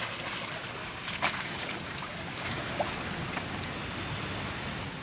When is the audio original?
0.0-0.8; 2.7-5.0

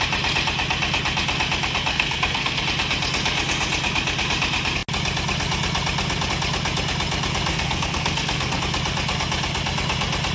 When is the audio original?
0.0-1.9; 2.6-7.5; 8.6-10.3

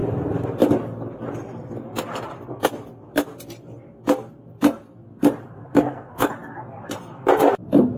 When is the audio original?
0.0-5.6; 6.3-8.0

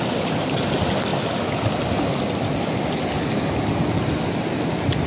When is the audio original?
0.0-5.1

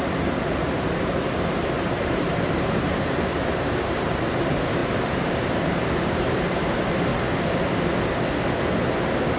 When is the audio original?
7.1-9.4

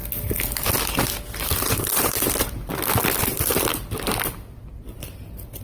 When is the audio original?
0.0-1.8; 2.7-3.3; 3.7-5.6

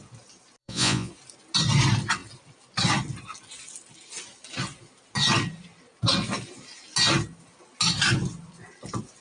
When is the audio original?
0.0-0.6; 1.1-9.2